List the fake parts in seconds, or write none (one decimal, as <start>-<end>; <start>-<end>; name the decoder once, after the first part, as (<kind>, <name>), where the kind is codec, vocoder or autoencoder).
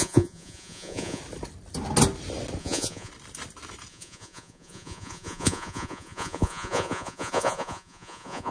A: 0.0-1.2 (vocoder, Vocos); 2.6-3.1; 3.9-8.5